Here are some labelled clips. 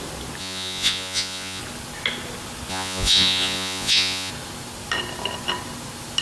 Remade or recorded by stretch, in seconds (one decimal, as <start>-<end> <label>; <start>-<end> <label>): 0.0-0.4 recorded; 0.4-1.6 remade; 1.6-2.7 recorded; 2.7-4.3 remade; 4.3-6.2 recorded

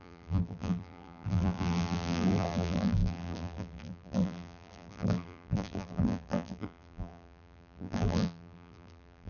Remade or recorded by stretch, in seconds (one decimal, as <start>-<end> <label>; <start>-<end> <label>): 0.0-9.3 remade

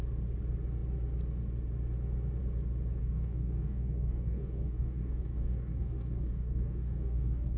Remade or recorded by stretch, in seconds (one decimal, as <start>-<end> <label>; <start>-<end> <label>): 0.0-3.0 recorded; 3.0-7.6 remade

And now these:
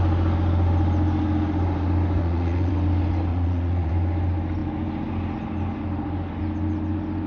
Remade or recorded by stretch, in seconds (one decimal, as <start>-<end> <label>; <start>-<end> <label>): 0.0-2.2 recorded; 2.2-2.7 remade; 2.7-3.3 recorded; 3.3-3.9 remade; 3.9-7.3 recorded

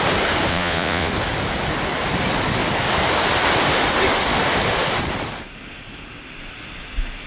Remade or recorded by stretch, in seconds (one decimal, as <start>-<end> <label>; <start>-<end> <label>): 0.0-0.5 recorded; 0.5-1.1 remade; 1.1-7.3 recorded